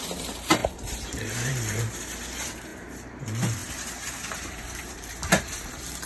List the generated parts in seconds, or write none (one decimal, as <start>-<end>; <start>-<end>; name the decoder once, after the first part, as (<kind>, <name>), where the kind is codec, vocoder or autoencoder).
0.0-6.1 (vocoder, BigVGAN v2)